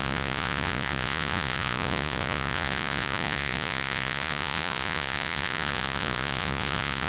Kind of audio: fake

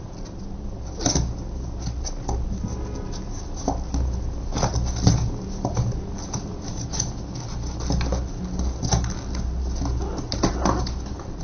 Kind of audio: real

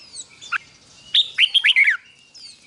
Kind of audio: real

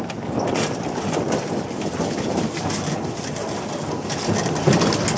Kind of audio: real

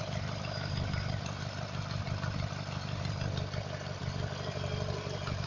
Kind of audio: real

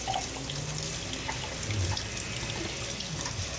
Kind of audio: real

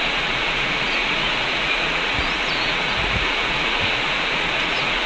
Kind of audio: fake